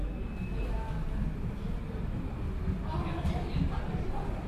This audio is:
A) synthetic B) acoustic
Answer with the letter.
B